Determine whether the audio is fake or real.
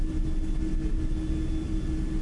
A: real